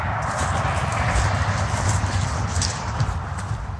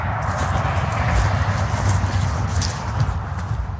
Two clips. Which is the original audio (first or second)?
second